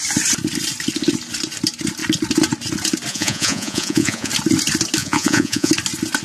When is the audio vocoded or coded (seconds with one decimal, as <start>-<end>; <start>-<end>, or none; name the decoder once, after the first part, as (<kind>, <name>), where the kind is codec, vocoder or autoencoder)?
3.1-4.3 (vocoder, Vocos); 5.0-5.7